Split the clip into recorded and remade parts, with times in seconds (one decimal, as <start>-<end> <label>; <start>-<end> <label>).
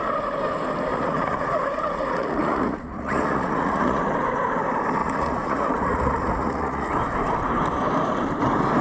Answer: 0.0-0.9 recorded; 0.9-4.0 remade; 4.0-5.0 recorded; 5.0-6.9 remade; 6.9-8.8 recorded